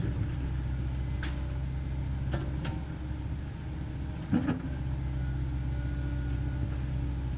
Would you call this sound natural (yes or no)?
yes